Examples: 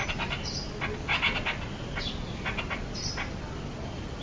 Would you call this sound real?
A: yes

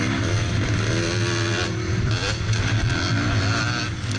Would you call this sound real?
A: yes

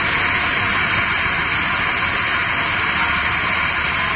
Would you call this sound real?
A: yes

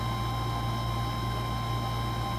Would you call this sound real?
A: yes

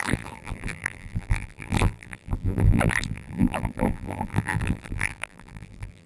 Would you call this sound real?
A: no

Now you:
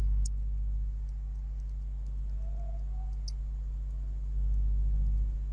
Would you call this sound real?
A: yes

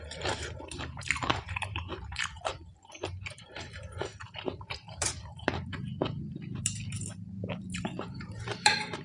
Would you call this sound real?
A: no